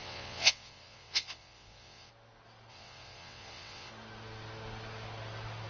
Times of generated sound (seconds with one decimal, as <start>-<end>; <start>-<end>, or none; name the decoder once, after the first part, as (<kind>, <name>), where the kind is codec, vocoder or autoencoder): 0.0-2.1 (vocoder, WaveNeXt); 2.7-3.9